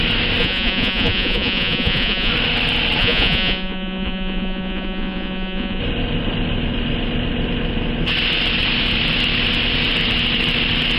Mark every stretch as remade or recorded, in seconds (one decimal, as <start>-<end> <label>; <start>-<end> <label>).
0.0-0.4 recorded; 0.4-2.3 remade; 2.3-3.0 recorded; 3.0-5.8 remade; 5.8-11.0 recorded